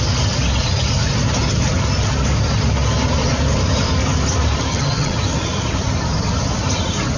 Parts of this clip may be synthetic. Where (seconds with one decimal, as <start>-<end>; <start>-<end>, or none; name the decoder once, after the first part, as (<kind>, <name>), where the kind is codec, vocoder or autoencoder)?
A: 4.7-5.2 (vocoder, HiFi-GAN)